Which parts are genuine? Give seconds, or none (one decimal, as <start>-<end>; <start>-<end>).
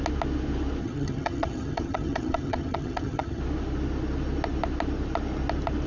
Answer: 0.0-0.8; 3.4-5.9